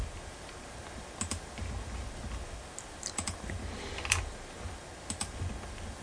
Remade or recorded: recorded